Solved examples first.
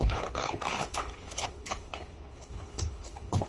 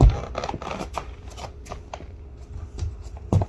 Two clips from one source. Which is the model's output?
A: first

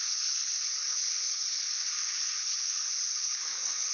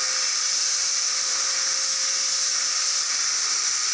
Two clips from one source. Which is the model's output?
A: first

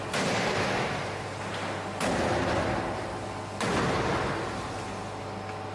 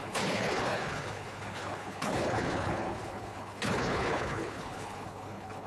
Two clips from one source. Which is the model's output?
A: second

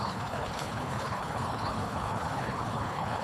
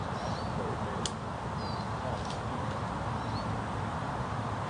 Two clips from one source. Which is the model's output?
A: first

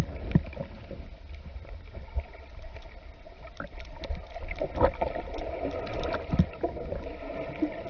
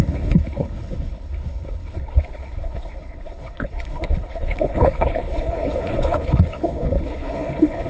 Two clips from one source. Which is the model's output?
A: second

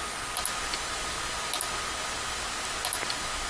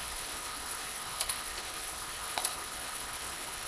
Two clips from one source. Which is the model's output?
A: second